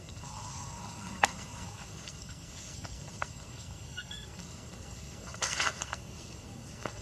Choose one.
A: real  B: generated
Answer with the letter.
B